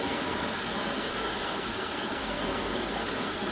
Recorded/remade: remade